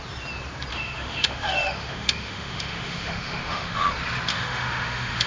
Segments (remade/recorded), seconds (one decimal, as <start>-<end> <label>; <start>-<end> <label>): 0.0-0.7 recorded; 0.7-3.9 remade; 3.9-4.3 recorded; 4.3-5.3 remade